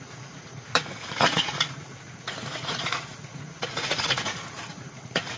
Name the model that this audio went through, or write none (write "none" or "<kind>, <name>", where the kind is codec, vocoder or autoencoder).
vocoder, Vocos